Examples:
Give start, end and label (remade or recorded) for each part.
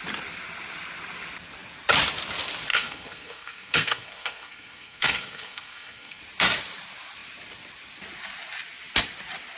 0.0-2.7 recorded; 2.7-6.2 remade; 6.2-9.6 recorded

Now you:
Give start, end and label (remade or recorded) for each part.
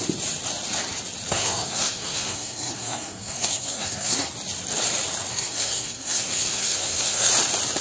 0.0-1.3 recorded; 1.3-4.3 remade; 4.3-5.3 recorded; 5.3-7.3 remade; 7.3-7.8 recorded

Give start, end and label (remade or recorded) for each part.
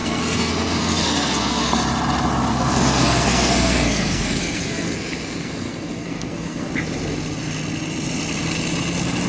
0.0-1.7 remade; 1.7-2.5 recorded; 2.5-6.7 remade; 6.7-9.3 recorded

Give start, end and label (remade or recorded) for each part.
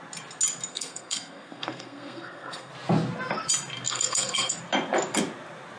0.0-0.7 recorded; 0.7-2.7 remade; 2.7-3.9 recorded; 3.9-4.6 remade; 4.6-5.8 recorded